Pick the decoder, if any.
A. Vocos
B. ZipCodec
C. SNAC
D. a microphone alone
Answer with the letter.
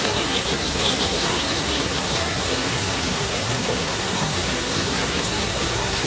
C